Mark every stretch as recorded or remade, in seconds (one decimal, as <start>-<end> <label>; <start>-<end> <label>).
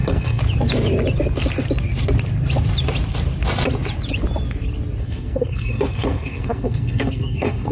0.0-0.4 remade; 0.4-5.0 recorded; 5.0-7.7 remade